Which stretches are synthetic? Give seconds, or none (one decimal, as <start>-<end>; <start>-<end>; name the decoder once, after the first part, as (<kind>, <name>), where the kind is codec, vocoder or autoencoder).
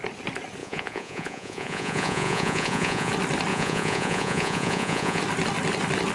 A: 0.6-3.1 (vocoder, Vocos); 3.5-5.2